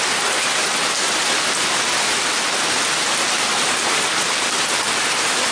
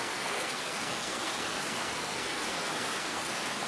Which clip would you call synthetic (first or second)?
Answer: second